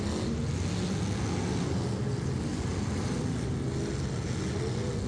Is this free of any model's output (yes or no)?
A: yes